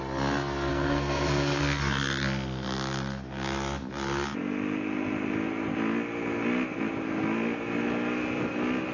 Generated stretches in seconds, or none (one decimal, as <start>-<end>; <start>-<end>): 0.7-1.6